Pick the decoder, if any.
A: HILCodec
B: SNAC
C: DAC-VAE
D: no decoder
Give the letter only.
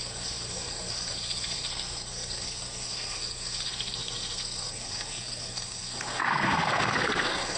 B